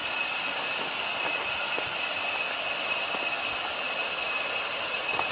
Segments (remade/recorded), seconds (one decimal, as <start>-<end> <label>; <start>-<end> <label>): 0.0-5.3 recorded